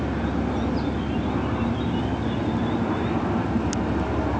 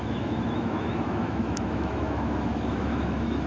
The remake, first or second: second